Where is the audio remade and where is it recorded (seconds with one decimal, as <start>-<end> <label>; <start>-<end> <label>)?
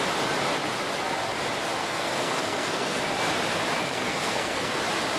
0.0-1.8 recorded; 1.8-3.0 remade; 3.0-3.8 recorded; 3.8-4.8 remade; 4.8-5.2 recorded